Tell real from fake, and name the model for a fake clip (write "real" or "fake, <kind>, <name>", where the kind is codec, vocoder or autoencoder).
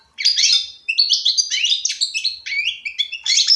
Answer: real